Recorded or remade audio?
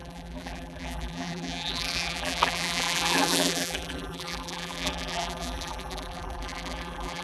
remade